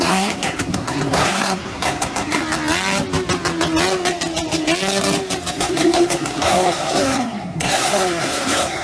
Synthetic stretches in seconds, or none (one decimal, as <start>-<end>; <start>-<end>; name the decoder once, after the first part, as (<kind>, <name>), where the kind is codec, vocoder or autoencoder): 0.0-2.4 (codec, SNAC); 5.5-8.8